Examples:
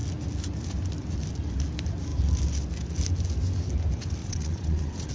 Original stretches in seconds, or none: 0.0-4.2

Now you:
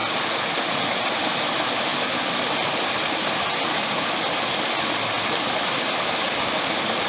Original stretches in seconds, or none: 0.0-7.1

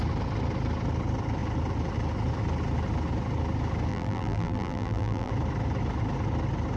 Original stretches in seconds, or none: 0.0-3.9; 5.3-6.8

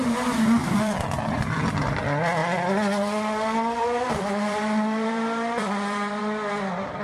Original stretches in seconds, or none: 0.0-0.6; 1.7-2.4; 6.2-7.0

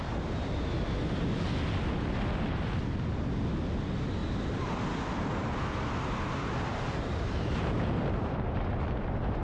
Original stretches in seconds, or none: 0.0-4.2; 4.7-6.7; 8.6-9.4

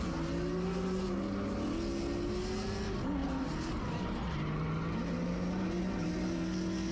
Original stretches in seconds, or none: 0.0-6.9

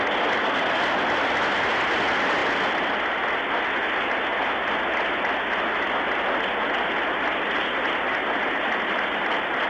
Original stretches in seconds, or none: 0.0-9.7

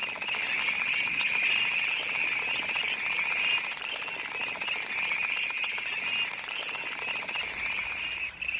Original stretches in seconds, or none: 0.0-8.6